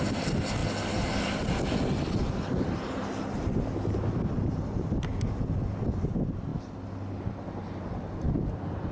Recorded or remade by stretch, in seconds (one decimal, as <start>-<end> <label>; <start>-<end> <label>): 0.0-0.6 remade; 0.6-4.6 recorded; 4.6-5.1 remade; 5.1-6.0 recorded; 6.0-6.5 remade; 6.5-8.2 recorded; 8.2-8.9 remade